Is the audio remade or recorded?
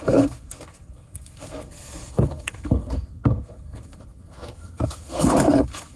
remade